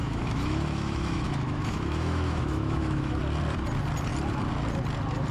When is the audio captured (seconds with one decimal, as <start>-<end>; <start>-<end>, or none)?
3.2-5.3